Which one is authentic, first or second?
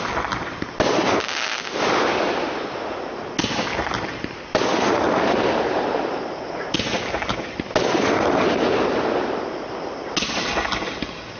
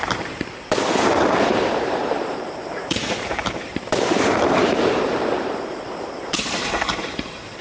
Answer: first